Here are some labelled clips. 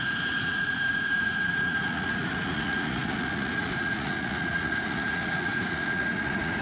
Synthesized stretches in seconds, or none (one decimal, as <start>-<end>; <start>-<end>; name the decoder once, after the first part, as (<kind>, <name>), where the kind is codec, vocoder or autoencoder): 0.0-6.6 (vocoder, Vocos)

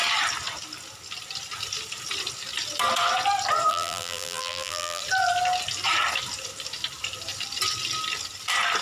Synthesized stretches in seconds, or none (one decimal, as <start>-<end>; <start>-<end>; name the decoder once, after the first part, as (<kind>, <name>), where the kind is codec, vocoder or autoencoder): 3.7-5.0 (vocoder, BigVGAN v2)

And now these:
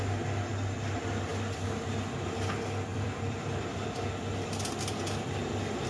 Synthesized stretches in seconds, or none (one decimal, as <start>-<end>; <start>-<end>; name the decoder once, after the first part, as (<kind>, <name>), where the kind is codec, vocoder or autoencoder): 2.9-4.0 (vocoder, BigVGAN v2)

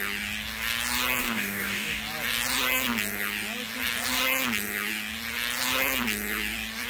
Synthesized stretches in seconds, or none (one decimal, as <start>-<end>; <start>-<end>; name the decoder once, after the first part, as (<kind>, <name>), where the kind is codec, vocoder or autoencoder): 1.2-2.0 (codec, DAC)